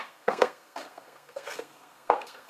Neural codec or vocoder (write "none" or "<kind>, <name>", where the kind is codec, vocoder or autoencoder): codec, SNAC